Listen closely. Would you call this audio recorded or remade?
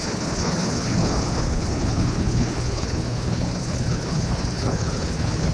remade